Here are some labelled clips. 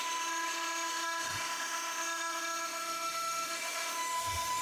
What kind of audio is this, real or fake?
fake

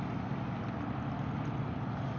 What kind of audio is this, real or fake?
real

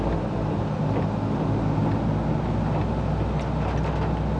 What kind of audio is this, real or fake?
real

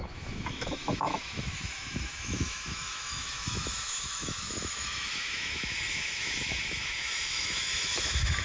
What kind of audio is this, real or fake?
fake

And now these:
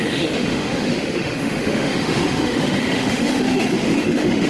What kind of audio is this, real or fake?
fake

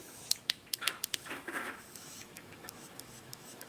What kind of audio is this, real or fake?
fake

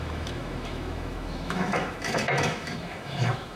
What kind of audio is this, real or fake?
fake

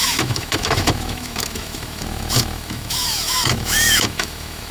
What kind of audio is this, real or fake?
fake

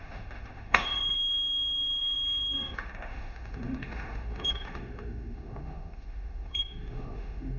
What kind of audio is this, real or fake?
fake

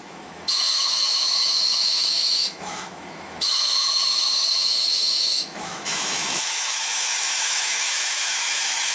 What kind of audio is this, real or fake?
fake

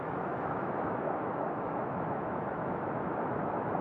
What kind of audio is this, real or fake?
fake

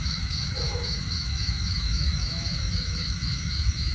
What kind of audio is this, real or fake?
fake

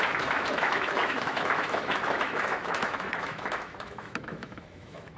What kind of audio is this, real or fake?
fake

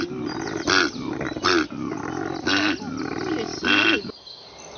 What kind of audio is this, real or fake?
real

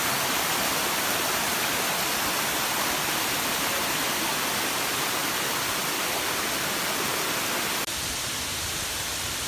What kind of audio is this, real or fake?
real